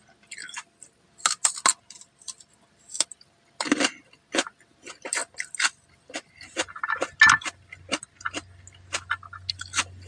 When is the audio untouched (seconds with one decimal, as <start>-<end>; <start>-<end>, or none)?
0.0-10.1